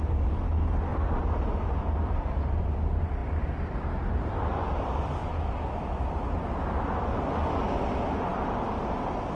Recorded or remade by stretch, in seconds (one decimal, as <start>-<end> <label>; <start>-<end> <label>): 0.0-0.9 recorded; 0.9-2.6 remade; 2.6-8.3 recorded; 8.3-9.3 remade